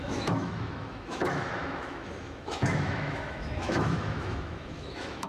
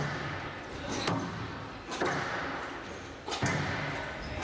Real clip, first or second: second